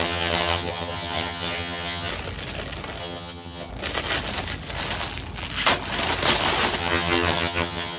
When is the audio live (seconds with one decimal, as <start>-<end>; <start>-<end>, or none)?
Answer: 2.1-3.0; 3.7-6.8